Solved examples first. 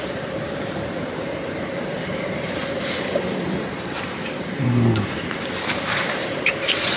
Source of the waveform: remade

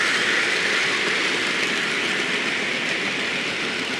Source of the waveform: recorded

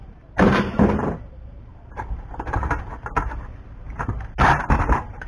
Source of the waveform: remade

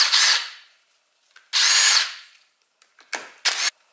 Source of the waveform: recorded